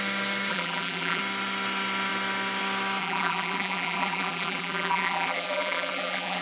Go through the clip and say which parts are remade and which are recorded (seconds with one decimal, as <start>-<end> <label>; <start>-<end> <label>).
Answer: 0.0-0.5 recorded; 0.5-1.2 remade; 1.2-3.0 recorded; 3.0-6.4 remade